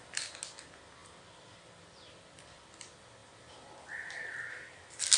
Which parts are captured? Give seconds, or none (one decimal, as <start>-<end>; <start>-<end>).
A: 0.0-5.2